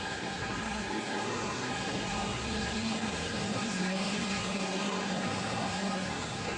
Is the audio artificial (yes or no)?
yes